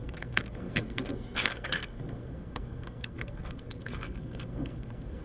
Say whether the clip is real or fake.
fake